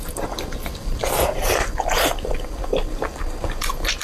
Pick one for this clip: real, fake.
real